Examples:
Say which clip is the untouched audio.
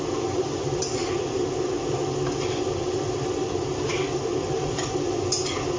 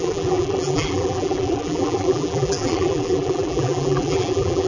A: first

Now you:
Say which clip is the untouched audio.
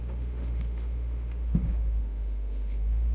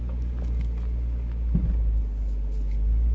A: second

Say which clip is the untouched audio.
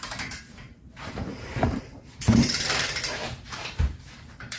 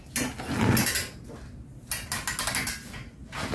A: second